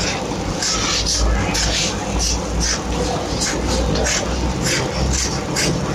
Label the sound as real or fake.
real